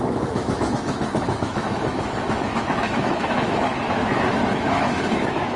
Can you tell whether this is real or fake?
fake